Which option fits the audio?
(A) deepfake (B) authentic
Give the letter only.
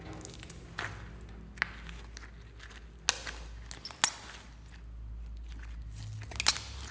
B